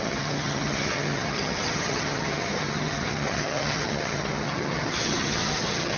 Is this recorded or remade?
remade